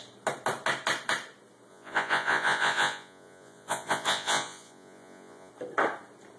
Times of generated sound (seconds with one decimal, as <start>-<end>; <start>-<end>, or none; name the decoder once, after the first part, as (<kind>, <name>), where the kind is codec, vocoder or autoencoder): 1.7-5.5 (vocoder, Vocos)